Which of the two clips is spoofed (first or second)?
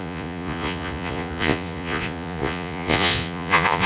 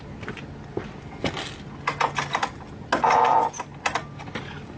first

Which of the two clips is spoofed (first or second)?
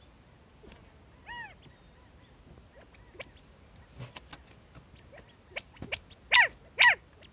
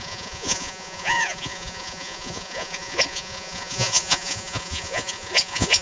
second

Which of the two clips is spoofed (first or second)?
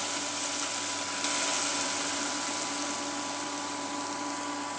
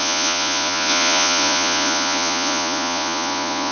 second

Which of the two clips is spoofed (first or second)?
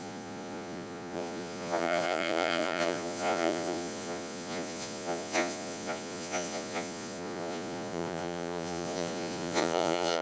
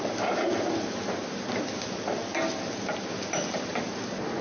first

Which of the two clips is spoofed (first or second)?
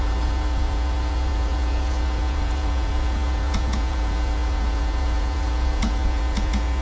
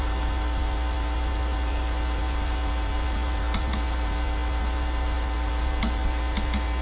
first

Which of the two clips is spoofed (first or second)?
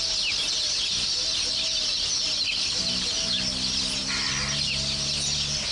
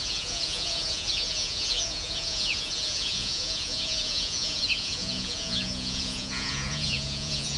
second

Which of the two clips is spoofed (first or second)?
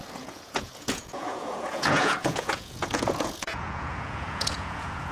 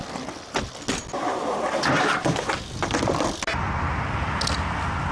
first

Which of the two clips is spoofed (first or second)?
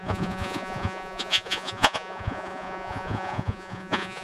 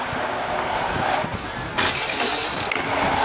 first